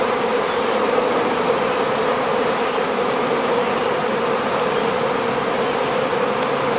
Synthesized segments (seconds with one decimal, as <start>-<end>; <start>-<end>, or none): none